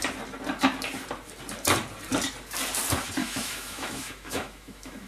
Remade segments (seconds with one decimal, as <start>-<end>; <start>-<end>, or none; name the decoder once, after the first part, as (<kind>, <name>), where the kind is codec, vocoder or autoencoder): 3.2-5.1 (autoencoder, DAC-VAE)